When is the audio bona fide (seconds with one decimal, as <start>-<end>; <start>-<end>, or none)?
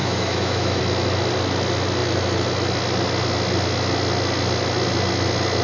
0.8-5.6